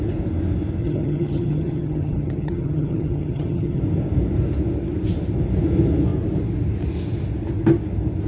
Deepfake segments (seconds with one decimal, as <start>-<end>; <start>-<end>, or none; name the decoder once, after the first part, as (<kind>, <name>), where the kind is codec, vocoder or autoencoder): 0.8-3.8 (vocoder, HiFi-GAN)